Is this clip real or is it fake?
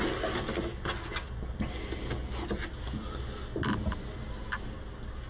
real